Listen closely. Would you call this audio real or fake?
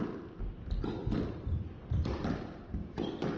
real